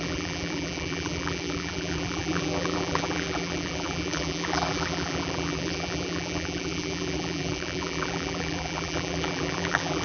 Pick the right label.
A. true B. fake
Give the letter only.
B